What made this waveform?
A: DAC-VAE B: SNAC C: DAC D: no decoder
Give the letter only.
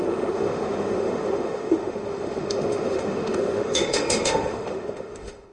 A